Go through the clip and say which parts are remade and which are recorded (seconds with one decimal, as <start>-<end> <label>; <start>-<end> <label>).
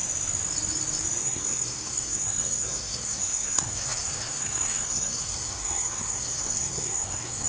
0.0-1.2 recorded; 1.2-7.5 remade